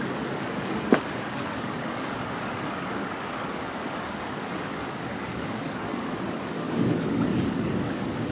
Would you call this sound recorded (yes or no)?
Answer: no